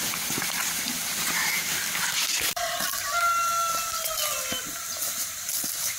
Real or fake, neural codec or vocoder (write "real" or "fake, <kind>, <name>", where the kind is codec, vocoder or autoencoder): real